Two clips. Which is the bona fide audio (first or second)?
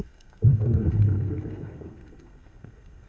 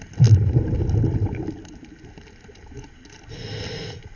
second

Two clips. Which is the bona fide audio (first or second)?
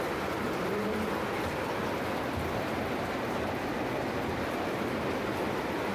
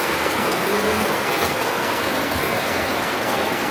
first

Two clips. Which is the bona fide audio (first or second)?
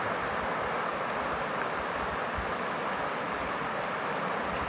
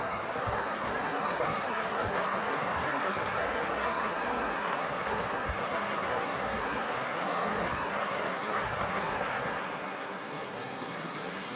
first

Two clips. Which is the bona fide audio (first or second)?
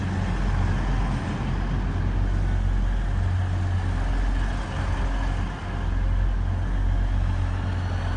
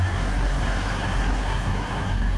first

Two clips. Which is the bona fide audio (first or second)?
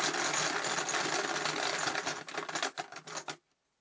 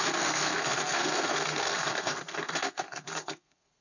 first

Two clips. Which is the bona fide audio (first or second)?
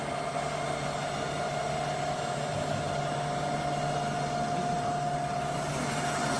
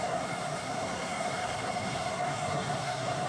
first